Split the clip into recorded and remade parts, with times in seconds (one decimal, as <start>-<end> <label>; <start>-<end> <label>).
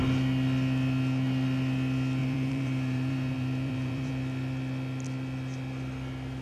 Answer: 0.0-2.2 recorded; 2.2-4.1 remade; 4.1-6.4 recorded